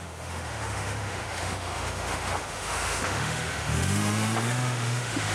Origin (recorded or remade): remade